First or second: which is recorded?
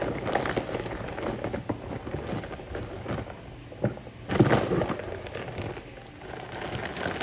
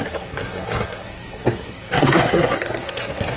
first